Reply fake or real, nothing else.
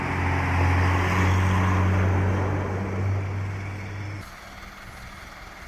real